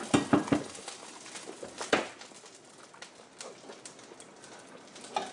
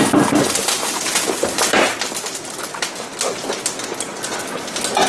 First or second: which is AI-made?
first